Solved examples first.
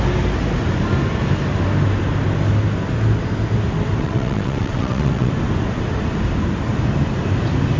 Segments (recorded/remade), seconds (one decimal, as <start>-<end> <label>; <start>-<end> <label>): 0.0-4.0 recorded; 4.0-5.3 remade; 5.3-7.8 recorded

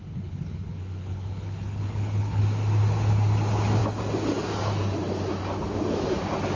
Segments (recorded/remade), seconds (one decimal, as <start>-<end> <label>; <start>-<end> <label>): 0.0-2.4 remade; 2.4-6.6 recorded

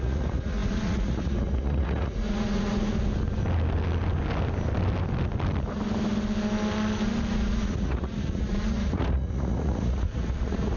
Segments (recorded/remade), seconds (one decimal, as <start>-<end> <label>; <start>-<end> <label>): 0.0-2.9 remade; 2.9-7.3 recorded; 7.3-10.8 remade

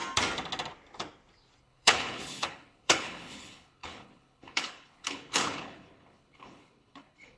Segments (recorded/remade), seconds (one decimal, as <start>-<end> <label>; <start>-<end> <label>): 0.0-1.6 recorded; 1.6-7.4 remade

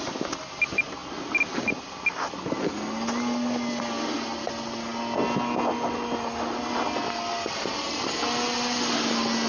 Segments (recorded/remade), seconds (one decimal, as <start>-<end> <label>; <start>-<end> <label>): 0.0-9.5 recorded